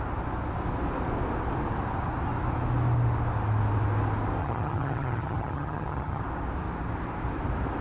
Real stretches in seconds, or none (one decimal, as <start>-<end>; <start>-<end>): 0.0-4.4; 6.2-7.8